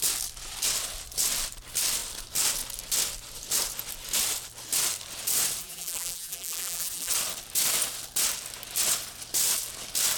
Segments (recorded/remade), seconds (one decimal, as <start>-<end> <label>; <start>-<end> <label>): 0.0-5.6 recorded; 5.6-7.1 remade; 7.1-10.2 recorded

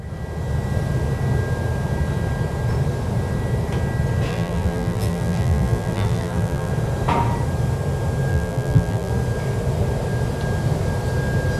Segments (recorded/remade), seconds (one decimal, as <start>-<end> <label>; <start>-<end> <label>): 0.0-4.3 recorded; 4.3-6.7 remade; 6.7-8.3 recorded; 8.3-9.1 remade; 9.1-11.6 recorded

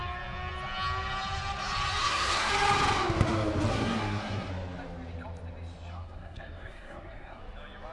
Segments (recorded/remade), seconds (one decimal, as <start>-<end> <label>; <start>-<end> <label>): 0.0-2.0 recorded; 2.0-2.5 remade; 2.5-3.7 recorded; 3.7-4.5 remade; 4.5-5.9 recorded; 5.9-7.4 remade; 7.4-7.9 recorded

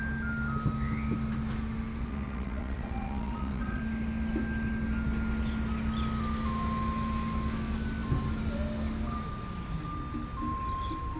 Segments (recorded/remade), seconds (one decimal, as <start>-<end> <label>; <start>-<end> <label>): 0.0-2.0 recorded; 2.0-3.8 remade; 3.8-11.2 recorded

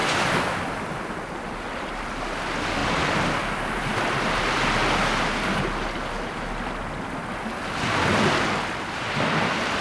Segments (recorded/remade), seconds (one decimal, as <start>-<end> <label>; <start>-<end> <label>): 0.0-2.0 remade; 2.0-9.8 recorded